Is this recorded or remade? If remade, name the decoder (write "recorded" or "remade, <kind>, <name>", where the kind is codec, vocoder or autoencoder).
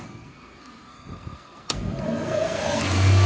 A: remade, codec, SNAC